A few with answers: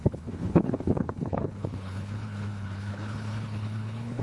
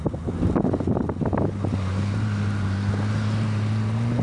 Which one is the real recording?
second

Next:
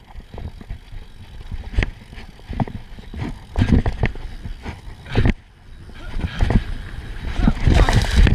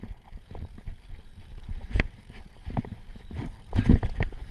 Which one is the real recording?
first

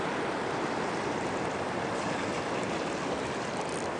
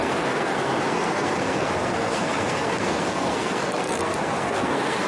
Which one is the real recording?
first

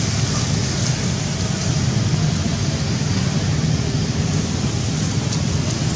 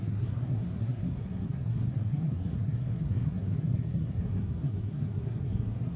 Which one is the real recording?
first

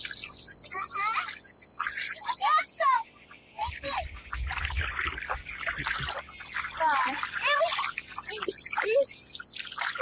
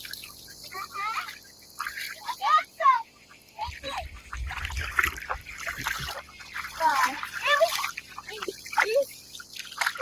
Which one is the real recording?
first